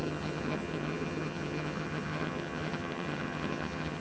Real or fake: fake